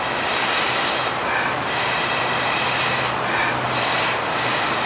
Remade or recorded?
recorded